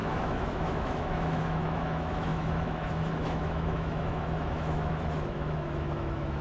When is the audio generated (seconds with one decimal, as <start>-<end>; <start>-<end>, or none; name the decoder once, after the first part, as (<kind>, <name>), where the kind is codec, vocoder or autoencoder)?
0.0-6.4 (autoencoder, DAC-VAE)